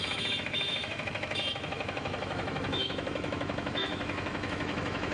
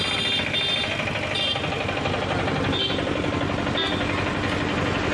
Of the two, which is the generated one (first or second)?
first